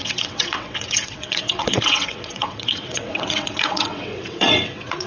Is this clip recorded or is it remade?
remade